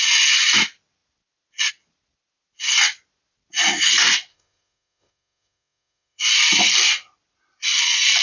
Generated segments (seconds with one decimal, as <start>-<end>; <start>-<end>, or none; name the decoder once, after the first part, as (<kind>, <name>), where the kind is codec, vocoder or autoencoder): 4.3-6.3 (codec, SNAC)

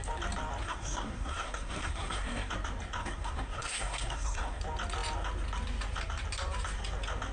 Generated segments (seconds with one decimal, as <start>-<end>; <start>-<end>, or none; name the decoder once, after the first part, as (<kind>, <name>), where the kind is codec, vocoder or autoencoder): 0.6-2.5 (codec, SNAC); 3.0-4.6

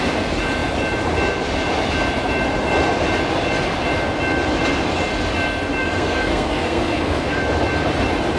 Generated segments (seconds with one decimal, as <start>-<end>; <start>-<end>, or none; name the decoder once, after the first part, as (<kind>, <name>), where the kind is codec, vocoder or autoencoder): 5.8-7.4 (codec, SNAC)